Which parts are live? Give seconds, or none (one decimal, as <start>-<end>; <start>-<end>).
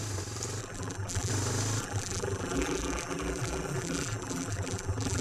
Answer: 0.0-0.6; 1.3-1.8